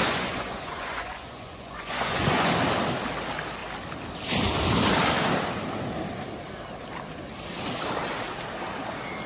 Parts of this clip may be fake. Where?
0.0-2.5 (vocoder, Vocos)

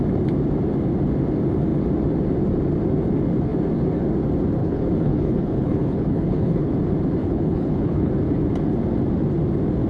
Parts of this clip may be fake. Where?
4.6-6.7 (codec, HILCodec); 7.2-8.1

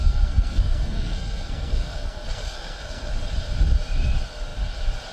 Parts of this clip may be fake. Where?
0.0-3.1 (codec, SNAC)

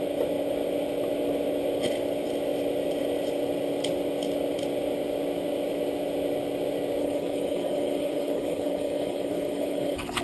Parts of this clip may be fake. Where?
7.0-10.2 (codec, HILCodec)

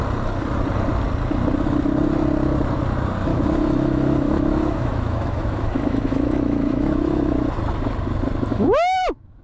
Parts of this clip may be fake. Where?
3.3-7.3 (autoencoder, DAC-VAE); 8.5-9.4